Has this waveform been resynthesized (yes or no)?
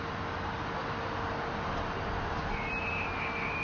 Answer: no